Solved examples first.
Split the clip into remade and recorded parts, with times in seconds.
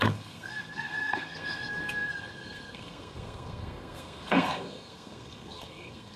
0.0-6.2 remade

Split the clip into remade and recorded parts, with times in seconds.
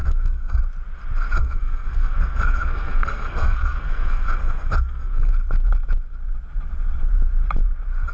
0.0-0.6 remade; 0.6-1.4 recorded; 1.4-5.3 remade; 5.3-8.1 recorded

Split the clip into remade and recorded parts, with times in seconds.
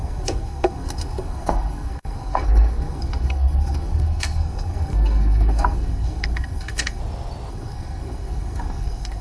0.0-7.0 remade; 7.0-7.5 recorded; 7.5-9.2 remade